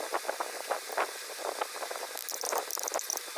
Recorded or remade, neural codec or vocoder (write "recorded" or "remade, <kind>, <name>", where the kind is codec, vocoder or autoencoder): recorded